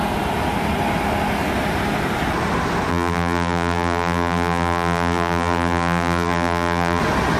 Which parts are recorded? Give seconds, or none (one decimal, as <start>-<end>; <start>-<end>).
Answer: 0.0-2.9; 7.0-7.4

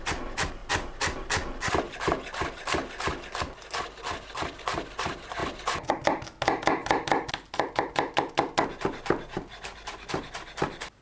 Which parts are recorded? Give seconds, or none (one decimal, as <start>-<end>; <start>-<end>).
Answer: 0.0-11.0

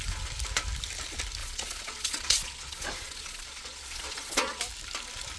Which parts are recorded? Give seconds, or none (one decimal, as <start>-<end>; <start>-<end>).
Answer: 0.0-1.4; 4.6-5.4

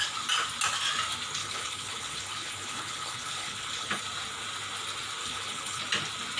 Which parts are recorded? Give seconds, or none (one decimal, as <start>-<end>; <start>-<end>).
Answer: 0.0-1.4; 4.0-5.2; 5.8-6.4

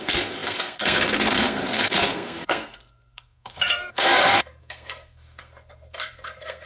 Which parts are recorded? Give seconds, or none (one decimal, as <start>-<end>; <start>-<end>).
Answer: none

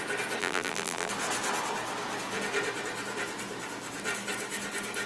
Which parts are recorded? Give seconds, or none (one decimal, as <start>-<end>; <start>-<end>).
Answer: 0.0-0.4; 1.1-5.1

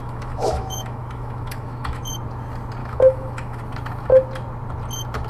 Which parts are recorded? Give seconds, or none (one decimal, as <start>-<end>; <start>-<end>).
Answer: 2.1-2.8; 3.6-5.3

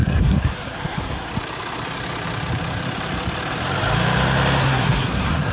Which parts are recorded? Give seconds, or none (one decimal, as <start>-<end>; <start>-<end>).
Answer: 1.3-4.6